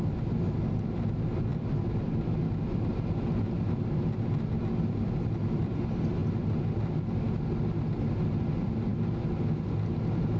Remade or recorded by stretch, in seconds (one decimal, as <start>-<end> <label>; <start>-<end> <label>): 0.0-10.4 recorded